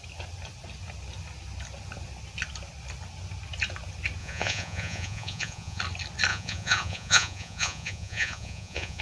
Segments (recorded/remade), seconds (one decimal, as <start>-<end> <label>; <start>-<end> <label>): 0.0-4.2 recorded; 4.2-5.8 remade; 5.8-6.3 recorded; 6.3-9.0 remade